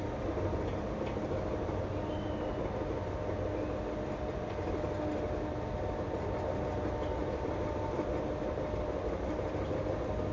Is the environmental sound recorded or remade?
recorded